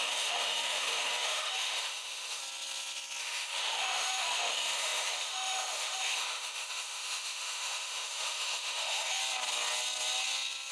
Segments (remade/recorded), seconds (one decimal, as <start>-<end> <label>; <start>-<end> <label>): 0.0-2.4 remade; 2.4-3.2 recorded; 3.2-9.2 remade; 9.2-10.7 recorded